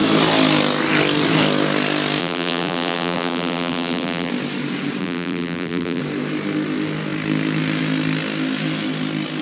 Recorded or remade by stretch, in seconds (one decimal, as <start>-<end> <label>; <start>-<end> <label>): 0.0-2.2 recorded; 2.2-4.3 remade; 4.3-5.0 recorded; 5.0-6.0 remade; 6.0-9.4 recorded